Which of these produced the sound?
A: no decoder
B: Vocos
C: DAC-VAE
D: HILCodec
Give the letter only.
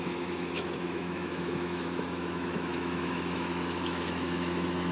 C